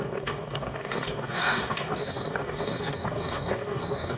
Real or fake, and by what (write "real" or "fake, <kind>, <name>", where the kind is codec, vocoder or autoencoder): fake, codec, DAC